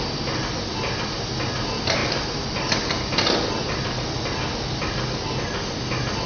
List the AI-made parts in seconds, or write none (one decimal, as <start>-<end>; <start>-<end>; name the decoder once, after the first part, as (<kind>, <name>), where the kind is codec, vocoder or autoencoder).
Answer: none